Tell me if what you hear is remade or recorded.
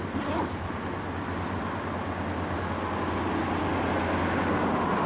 recorded